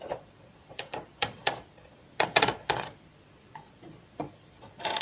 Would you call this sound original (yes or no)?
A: no